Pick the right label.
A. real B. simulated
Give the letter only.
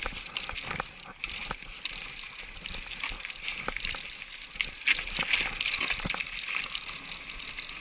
A